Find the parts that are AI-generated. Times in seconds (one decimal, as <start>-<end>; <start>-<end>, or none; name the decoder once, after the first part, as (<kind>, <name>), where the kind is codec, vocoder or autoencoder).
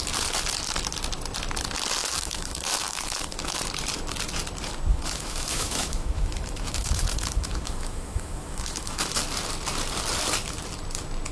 2.0-3.6 (autoencoder, DAC-VAE); 4.9-9.2